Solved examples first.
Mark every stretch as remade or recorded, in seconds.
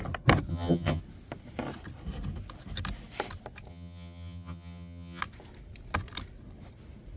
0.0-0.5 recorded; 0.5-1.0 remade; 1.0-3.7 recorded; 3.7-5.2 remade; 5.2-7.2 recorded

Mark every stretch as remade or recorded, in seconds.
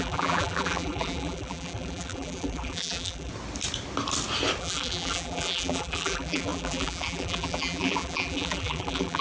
0.0-3.3 remade; 3.3-4.6 recorded; 4.6-9.2 remade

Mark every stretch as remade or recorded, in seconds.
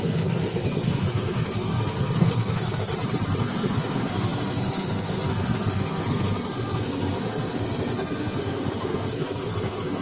0.0-2.9 remade; 2.9-3.4 recorded; 3.4-10.0 remade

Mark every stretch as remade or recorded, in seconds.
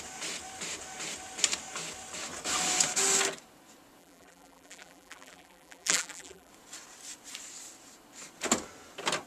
0.0-4.0 recorded; 4.0-6.5 remade; 6.5-9.3 recorded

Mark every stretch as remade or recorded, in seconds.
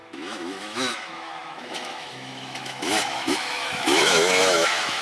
0.0-5.0 remade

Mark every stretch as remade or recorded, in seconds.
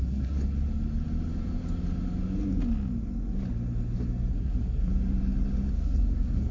0.0-0.4 remade; 0.4-4.3 recorded; 4.3-4.9 remade; 4.9-5.7 recorded; 5.7-6.5 remade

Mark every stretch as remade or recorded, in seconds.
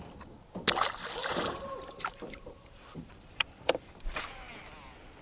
0.0-1.2 recorded; 1.2-4.3 remade; 4.3-5.2 recorded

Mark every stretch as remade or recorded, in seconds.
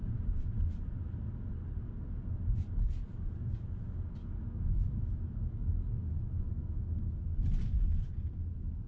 0.0-4.2 recorded; 4.2-7.1 remade; 7.1-8.9 recorded